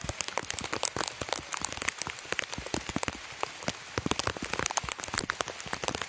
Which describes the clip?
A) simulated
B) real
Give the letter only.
B